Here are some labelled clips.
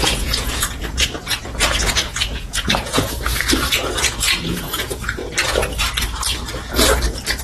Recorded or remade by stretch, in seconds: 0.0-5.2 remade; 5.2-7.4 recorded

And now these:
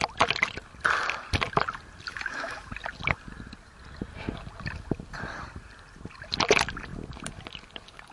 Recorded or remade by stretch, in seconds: 0.0-2.1 recorded; 2.1-2.7 remade; 2.7-8.1 recorded

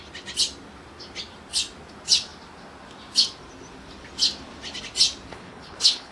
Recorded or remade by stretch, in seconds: 0.0-5.3 recorded; 5.3-6.1 remade

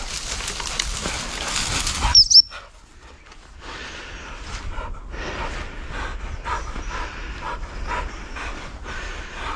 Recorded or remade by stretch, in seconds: 0.0-6.1 recorded; 6.1-8.6 remade; 8.6-9.6 recorded

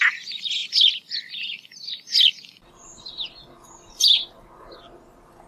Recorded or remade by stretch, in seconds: 0.0-5.5 recorded

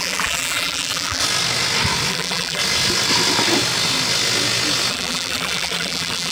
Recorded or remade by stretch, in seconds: 0.0-1.2 remade; 1.2-2.1 recorded; 2.1-2.6 remade; 2.6-4.9 recorded; 4.9-6.3 remade

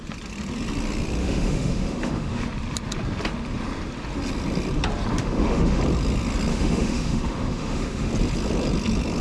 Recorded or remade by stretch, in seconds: 0.0-1.2 recorded; 1.2-2.4 remade; 2.4-5.2 recorded; 5.2-5.8 remade; 5.8-6.5 recorded; 6.5-8.1 remade; 8.1-9.2 recorded

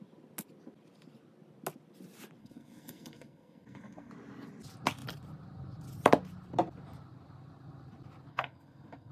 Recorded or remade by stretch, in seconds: 0.0-2.4 recorded; 2.4-4.1 remade; 4.1-8.3 recorded; 8.3-9.1 remade